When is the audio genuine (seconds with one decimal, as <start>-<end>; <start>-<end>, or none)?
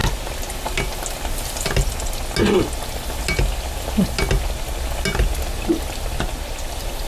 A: 0.0-7.1